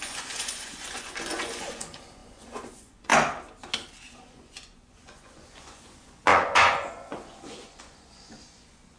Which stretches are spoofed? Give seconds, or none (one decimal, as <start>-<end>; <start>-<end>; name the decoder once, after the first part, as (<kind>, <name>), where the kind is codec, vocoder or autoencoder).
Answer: 0.0-3.1 (vocoder, Vocos); 4.1-9.0